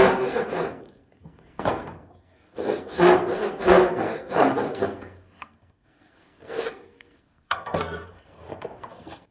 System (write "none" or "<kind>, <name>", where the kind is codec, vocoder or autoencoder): codec, SNAC